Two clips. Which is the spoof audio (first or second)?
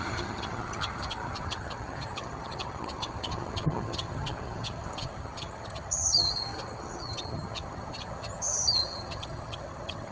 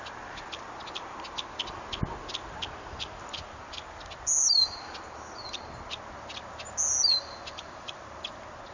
first